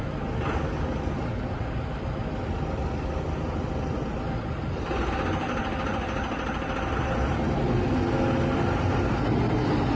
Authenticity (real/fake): real